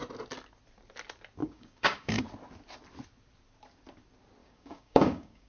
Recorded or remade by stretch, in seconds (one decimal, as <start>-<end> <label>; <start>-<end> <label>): 0.0-1.4 recorded; 1.4-2.2 remade; 2.2-4.4 recorded; 4.4-5.5 remade